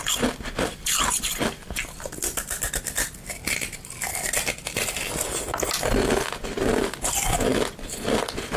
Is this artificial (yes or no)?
no